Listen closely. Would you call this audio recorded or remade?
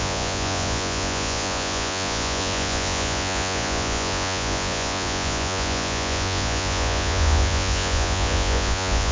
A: remade